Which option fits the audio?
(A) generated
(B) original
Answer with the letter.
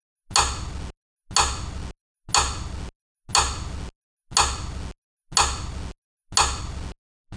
B